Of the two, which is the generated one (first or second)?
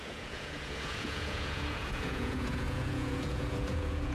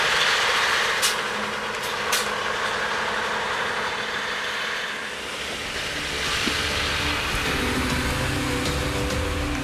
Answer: first